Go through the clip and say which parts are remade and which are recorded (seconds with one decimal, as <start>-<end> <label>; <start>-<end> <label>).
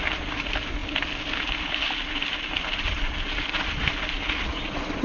0.0-5.0 recorded